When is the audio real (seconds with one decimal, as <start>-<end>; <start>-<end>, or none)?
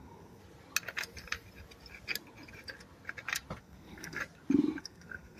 0.4-3.6; 4.2-4.8